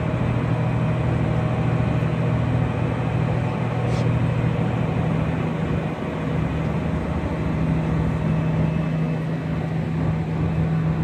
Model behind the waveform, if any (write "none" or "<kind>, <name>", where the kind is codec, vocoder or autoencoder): none